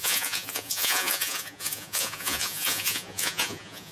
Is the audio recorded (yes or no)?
no